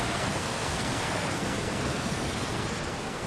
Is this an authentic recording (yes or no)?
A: no